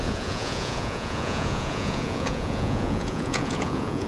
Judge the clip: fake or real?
fake